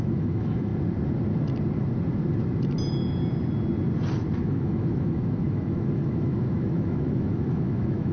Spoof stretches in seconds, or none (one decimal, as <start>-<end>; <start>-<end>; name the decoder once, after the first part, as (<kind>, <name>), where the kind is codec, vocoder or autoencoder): 0.0-0.7 (autoencoder, DAC-VAE); 4.4-8.1